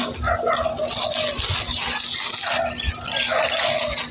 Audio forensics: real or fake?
real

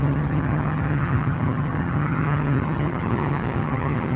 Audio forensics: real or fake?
fake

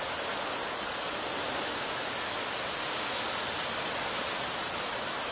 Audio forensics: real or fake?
real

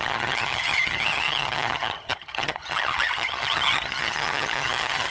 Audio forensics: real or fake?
fake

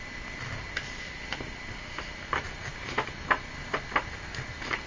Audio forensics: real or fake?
real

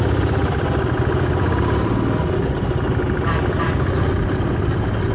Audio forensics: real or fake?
real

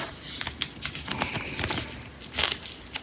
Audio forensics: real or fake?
real